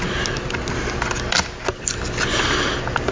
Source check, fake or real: real